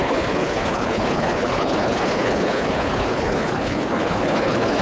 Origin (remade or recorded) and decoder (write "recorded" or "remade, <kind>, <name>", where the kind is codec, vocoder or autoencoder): remade, codec, HILCodec